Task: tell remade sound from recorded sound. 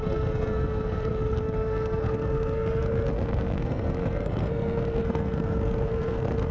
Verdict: remade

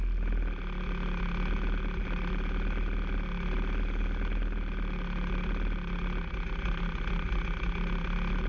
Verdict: recorded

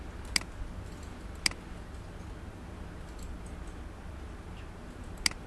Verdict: recorded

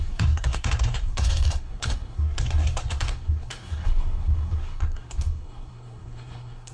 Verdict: remade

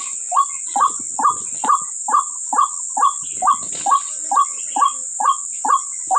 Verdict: recorded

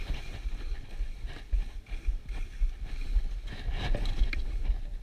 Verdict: recorded